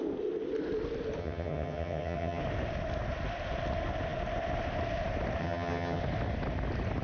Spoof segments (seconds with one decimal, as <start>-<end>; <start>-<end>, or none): 1.2-2.4; 5.4-6.0